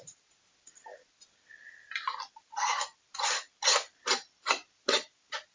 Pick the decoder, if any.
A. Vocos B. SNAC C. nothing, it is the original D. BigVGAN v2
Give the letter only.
C